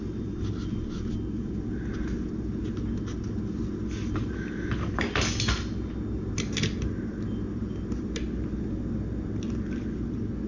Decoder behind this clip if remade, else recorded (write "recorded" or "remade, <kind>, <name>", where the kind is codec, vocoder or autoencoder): recorded